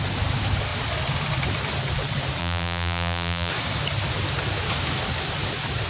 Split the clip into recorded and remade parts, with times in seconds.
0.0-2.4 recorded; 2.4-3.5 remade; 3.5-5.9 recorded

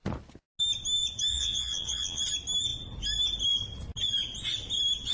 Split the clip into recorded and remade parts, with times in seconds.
0.0-1.3 recorded; 1.3-2.2 remade; 2.2-5.1 recorded